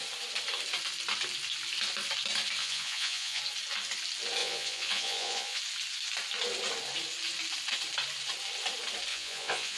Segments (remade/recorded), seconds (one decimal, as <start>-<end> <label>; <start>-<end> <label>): 0.0-2.6 recorded; 2.6-3.4 remade; 3.4-4.4 recorded; 4.4-5.6 remade; 5.6-9.1 recorded; 9.1-9.8 remade